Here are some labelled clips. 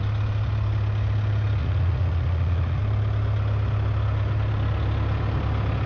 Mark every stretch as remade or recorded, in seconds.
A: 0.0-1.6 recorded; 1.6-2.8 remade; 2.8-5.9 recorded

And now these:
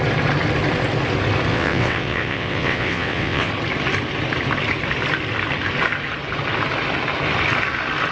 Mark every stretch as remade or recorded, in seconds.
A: 0.0-1.5 recorded; 1.5-3.5 remade; 3.5-8.1 recorded

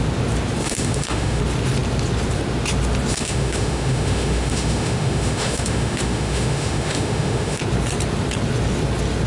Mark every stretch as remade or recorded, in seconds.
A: 0.0-0.6 recorded; 0.6-1.4 remade; 1.4-3.1 recorded; 3.1-7.6 remade; 7.6-9.3 recorded

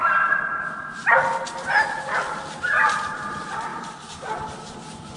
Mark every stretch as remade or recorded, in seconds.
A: 0.0-5.2 recorded

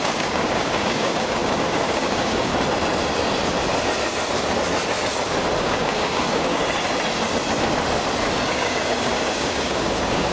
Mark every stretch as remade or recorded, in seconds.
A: 0.0-2.5 remade; 2.5-5.6 recorded; 5.6-6.6 remade; 6.6-8.5 recorded; 8.5-10.3 remade

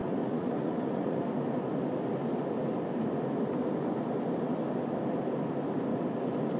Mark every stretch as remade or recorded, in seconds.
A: 0.0-1.2 remade; 1.2-6.6 recorded

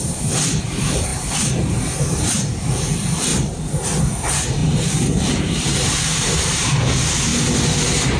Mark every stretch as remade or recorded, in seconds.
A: 0.0-3.3 remade; 3.3-4.0 recorded; 4.0-7.3 remade; 7.3-8.2 recorded